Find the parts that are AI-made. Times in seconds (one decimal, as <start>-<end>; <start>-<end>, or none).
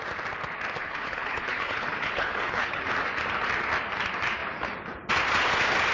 0.8-2.8